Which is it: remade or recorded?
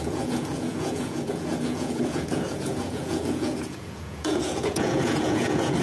remade